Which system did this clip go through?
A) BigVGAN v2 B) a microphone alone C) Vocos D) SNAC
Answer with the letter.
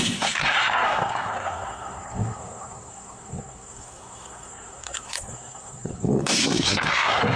D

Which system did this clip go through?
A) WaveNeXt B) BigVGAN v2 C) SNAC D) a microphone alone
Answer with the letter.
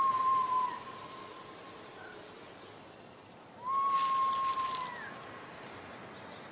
D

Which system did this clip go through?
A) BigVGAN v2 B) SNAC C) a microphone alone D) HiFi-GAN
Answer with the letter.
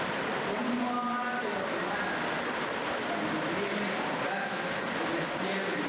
C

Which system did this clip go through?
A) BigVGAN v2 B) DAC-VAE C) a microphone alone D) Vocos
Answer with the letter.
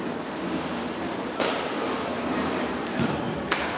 C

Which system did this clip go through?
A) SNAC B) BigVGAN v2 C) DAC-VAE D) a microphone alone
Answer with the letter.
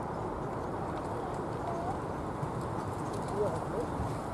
D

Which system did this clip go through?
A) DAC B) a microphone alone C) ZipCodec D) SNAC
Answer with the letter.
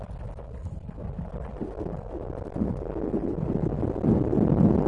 B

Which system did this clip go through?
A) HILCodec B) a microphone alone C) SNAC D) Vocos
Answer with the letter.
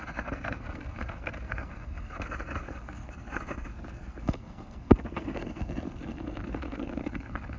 C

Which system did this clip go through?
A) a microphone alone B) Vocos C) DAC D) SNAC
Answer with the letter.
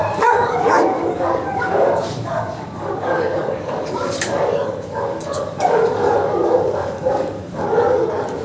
C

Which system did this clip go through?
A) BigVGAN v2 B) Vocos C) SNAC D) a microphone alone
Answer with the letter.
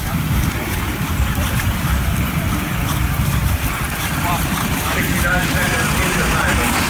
A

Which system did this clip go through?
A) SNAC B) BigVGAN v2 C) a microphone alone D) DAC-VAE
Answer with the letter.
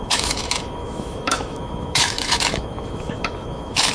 D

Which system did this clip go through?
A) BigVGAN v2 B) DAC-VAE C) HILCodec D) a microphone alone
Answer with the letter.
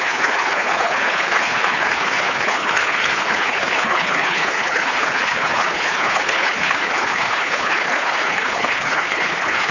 C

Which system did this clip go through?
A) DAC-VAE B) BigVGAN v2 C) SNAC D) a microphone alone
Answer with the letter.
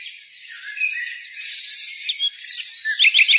D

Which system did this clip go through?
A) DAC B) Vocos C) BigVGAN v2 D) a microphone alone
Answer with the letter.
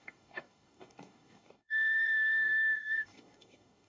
A